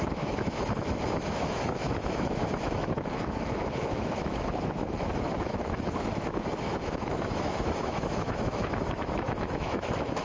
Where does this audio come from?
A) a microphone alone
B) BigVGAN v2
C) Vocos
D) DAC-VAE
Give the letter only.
D